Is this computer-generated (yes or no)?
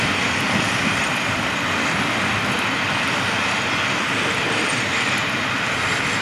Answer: no